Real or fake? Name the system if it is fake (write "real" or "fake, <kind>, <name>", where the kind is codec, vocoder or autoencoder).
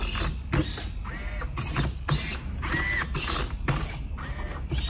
real